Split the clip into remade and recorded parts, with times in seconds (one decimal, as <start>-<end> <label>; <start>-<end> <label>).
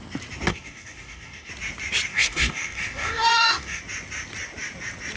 0.0-0.5 recorded; 0.5-1.5 remade; 1.5-2.1 recorded; 2.1-3.8 remade; 3.8-5.2 recorded